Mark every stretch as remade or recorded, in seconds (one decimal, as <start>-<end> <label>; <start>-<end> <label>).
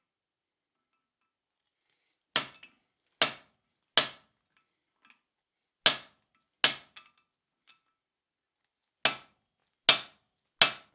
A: 0.0-10.9 recorded